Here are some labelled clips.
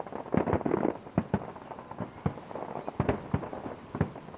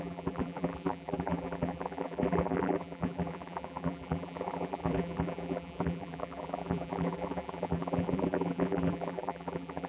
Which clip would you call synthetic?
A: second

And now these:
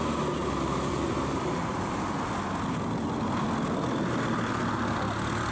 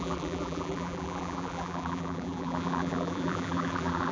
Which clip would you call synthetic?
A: second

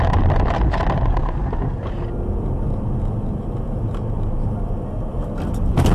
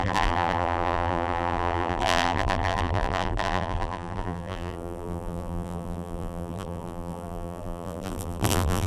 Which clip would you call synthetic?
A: second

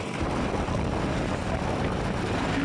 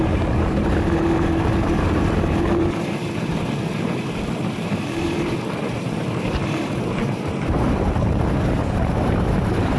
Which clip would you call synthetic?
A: second